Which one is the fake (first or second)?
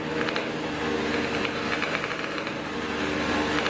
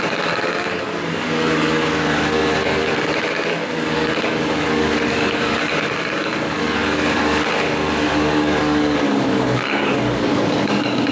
second